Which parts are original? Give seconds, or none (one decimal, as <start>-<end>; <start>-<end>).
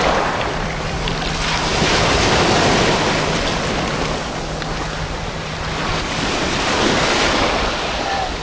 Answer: 0.0-8.4